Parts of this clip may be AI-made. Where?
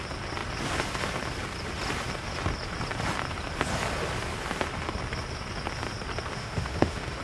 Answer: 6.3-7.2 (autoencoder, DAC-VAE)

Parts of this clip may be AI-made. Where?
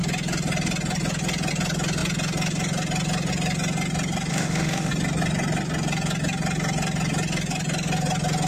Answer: 4.3-4.9 (autoencoder, DAC-VAE)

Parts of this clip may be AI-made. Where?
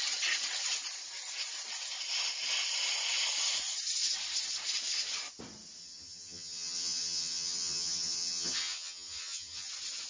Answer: 5.8-9.7 (vocoder, HiFi-GAN)